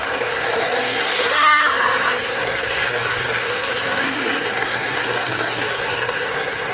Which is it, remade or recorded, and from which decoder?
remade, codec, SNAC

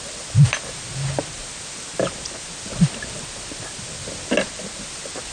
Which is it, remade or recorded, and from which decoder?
recorded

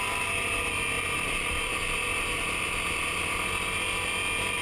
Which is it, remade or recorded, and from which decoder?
recorded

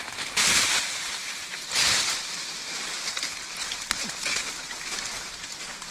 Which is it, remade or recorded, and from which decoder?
remade, vocoder, BigVGAN v2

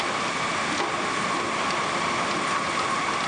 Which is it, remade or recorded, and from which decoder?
recorded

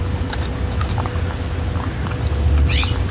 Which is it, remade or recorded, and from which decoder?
recorded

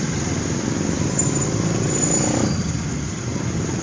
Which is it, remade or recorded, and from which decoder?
recorded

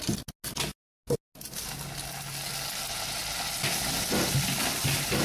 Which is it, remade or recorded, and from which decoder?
recorded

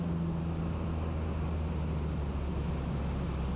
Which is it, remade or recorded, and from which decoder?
recorded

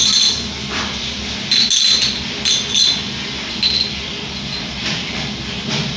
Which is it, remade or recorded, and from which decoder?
recorded